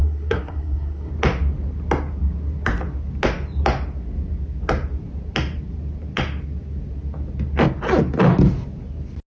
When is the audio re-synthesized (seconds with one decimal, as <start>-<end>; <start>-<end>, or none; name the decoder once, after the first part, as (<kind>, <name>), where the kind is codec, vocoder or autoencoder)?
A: 0.0-1.1 (codec, SNAC)